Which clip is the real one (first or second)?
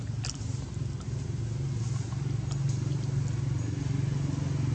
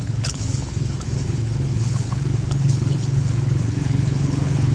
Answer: first